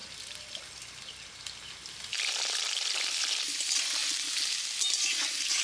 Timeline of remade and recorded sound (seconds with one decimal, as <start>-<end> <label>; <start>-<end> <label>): 0.0-5.6 recorded